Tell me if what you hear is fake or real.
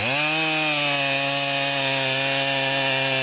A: real